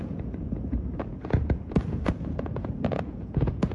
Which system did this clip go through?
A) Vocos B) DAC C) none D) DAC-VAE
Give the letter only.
A